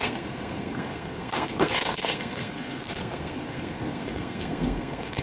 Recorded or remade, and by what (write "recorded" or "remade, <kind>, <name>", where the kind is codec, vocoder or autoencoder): remade, codec, SNAC